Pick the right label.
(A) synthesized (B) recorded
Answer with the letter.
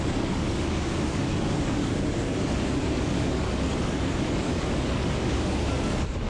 A